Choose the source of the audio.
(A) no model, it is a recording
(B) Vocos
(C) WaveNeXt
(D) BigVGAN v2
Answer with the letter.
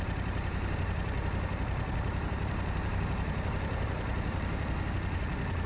D